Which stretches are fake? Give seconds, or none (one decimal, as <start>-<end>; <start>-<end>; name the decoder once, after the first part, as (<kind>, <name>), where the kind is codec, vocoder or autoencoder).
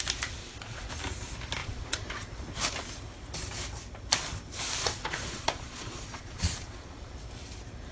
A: 0.4-0.9 (vocoder, Vocos); 1.6-2.1; 4.8-7.1